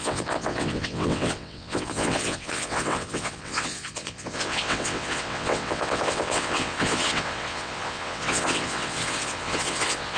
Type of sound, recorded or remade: remade